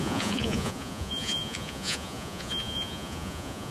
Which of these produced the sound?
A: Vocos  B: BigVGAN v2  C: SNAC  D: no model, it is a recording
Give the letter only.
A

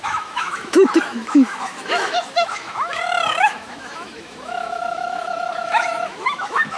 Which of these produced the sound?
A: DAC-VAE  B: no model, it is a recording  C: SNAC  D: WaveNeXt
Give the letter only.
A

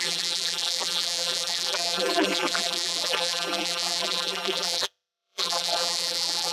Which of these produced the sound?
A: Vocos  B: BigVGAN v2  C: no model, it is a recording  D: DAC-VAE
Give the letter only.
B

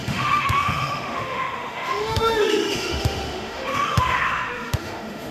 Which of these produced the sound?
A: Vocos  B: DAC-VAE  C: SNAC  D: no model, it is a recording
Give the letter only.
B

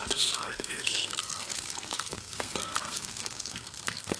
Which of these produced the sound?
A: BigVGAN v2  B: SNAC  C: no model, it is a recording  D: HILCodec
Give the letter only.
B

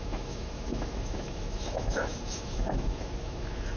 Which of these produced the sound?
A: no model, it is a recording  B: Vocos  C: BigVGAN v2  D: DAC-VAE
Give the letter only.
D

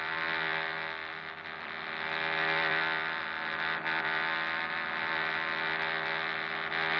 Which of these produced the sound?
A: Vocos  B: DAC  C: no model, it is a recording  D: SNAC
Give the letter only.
C